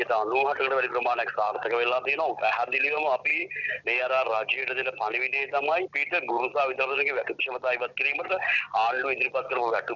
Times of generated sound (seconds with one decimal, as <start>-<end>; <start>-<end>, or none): none